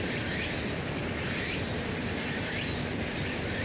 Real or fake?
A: real